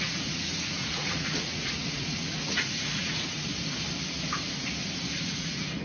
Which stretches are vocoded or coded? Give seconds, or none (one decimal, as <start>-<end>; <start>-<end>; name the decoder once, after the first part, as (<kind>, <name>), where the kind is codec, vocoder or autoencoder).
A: 0.0-3.5 (vocoder, Vocos); 5.2-5.8